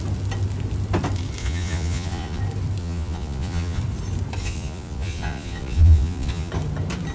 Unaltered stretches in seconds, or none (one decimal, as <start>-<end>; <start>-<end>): 0.0-1.4; 2.4-2.8; 3.8-4.4; 6.5-7.1